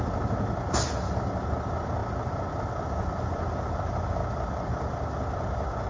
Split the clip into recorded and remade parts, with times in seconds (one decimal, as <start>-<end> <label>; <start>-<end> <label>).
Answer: 0.0-5.9 recorded